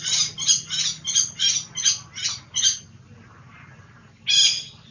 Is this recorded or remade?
recorded